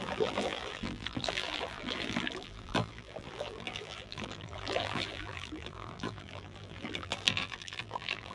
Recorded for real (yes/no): no